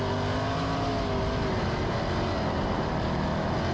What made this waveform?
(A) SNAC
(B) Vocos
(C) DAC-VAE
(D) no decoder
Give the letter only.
D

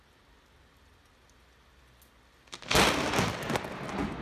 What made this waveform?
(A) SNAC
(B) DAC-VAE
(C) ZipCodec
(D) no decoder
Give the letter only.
D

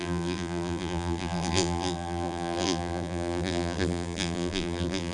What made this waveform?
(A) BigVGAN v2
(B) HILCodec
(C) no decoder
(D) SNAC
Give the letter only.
A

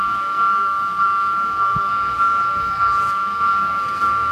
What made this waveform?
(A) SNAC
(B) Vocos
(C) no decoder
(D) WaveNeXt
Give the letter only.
A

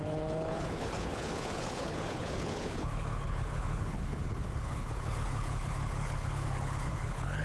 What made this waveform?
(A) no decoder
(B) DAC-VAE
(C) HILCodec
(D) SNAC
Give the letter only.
C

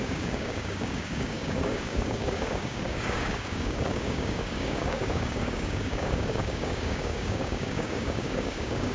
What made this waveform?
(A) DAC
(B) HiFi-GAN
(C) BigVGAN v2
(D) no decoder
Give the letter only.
A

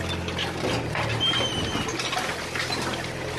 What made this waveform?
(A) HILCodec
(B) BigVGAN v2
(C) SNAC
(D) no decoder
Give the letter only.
D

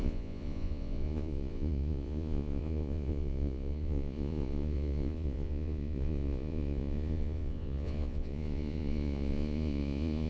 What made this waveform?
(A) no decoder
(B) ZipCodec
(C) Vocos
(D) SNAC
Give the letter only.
C